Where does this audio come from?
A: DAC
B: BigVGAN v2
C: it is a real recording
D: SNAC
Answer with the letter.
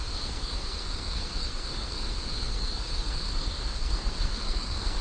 D